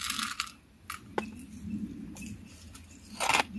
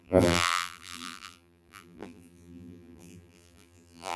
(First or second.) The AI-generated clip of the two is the second